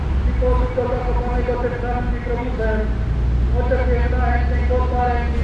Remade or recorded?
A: recorded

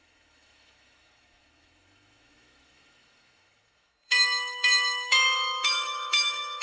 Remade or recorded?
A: remade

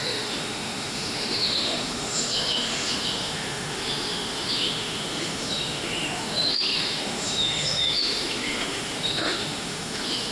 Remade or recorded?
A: remade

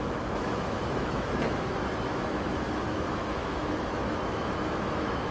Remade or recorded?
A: remade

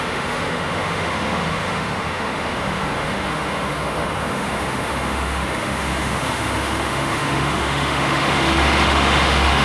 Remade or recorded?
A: remade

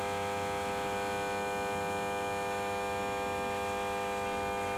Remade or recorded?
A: remade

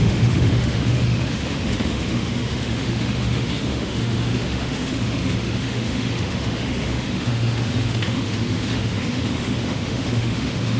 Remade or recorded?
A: remade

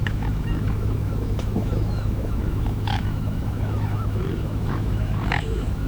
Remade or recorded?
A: remade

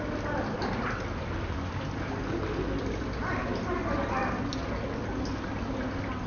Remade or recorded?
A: recorded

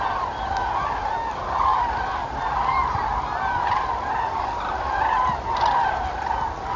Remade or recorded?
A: recorded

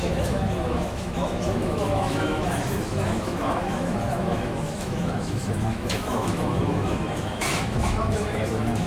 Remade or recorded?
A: remade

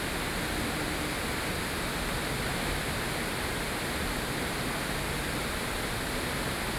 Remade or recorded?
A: recorded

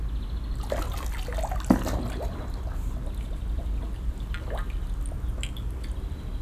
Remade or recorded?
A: recorded